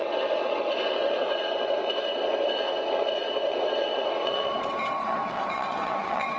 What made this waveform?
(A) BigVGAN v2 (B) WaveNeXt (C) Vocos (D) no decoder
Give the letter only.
B